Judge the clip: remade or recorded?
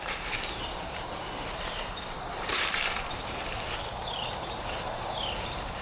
remade